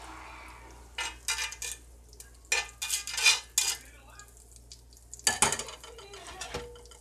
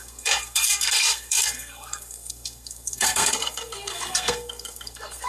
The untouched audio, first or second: first